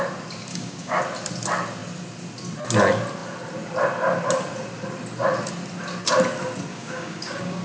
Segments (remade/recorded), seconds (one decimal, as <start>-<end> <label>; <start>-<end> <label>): 0.0-0.5 recorded; 0.5-1.0 remade; 1.0-6.7 recorded; 6.7-7.6 remade